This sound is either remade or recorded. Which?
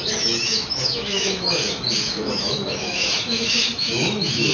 remade